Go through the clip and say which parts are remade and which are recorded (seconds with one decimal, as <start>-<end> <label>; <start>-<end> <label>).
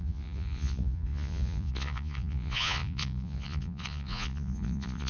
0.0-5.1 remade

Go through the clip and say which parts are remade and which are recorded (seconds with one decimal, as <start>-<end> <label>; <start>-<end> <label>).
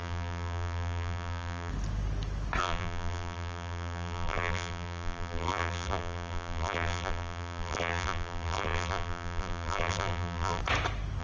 0.0-1.7 remade; 1.7-2.6 recorded; 2.6-10.6 remade; 10.6-11.2 recorded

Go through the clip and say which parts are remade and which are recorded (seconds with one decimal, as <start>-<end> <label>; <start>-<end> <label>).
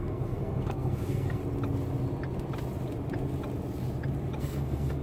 0.0-1.4 remade; 1.4-4.4 recorded; 4.4-5.0 remade